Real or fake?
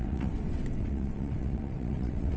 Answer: fake